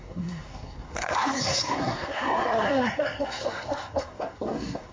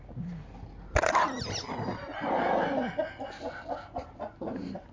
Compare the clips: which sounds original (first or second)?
second